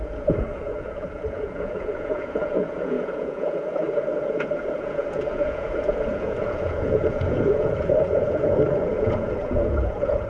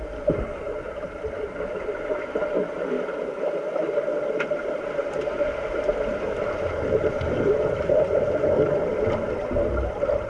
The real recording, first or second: second